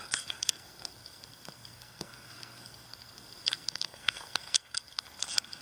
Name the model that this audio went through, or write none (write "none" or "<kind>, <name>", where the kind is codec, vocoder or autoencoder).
codec, SNAC